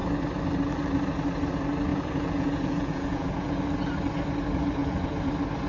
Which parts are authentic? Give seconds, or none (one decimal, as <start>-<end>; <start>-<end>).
0.0-1.9; 3.6-4.8; 5.3-5.7